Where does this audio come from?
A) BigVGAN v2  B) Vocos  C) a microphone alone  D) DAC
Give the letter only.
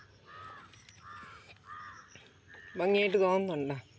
C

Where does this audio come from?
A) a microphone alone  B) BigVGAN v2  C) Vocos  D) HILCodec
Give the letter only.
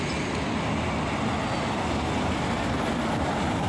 A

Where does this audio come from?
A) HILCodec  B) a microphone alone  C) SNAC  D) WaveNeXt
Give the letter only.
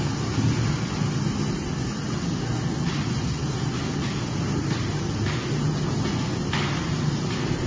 B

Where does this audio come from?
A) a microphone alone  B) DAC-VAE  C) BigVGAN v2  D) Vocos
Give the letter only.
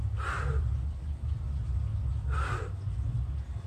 A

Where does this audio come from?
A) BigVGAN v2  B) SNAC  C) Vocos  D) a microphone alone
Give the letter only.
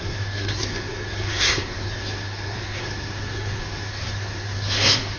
B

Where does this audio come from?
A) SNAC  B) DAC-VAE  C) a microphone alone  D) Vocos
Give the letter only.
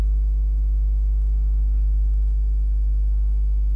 C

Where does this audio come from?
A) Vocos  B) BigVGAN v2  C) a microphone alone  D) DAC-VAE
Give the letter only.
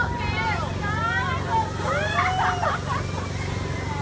C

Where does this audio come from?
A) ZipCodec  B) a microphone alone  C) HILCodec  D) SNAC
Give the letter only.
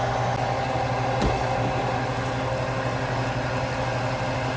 B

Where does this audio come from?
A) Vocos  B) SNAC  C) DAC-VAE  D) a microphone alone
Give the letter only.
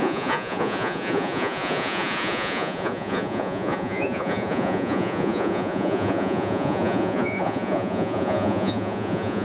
A